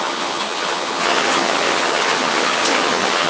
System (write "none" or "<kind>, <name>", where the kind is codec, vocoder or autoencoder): vocoder, HiFi-GAN